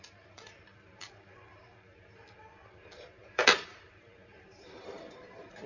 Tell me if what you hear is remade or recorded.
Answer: remade